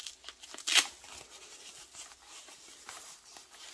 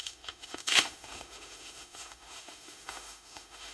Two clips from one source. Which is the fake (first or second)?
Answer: second